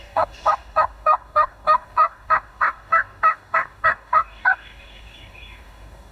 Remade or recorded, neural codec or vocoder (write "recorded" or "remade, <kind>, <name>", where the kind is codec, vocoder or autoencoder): remade, codec, DAC